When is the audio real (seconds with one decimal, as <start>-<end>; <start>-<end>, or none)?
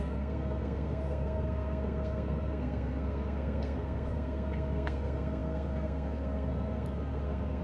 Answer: none